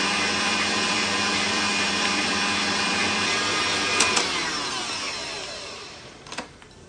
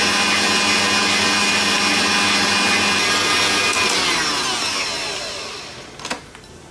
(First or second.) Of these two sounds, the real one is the second